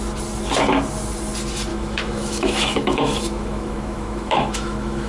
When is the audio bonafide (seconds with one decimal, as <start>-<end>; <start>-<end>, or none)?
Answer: 0.0-1.7

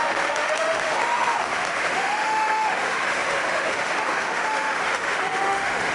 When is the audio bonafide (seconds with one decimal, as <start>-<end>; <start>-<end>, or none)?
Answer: none

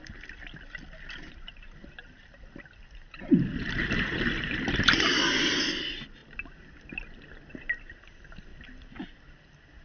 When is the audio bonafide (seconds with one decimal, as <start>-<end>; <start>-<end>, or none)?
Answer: 0.0-9.8

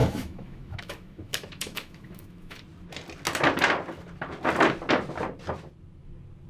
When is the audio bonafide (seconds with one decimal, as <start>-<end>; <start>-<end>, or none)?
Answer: 2.6-6.5